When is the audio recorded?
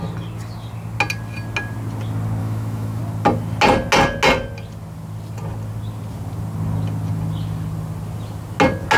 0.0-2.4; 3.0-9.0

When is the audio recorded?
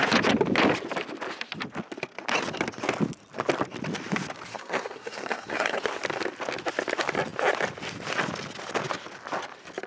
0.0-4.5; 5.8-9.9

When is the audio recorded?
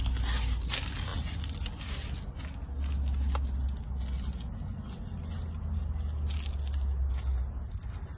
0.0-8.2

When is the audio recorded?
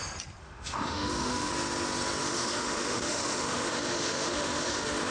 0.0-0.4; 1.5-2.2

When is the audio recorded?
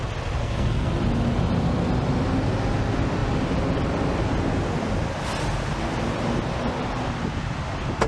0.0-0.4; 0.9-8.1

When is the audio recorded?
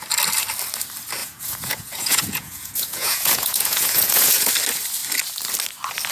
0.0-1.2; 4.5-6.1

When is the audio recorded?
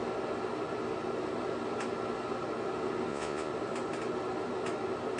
0.0-3.1; 3.5-5.2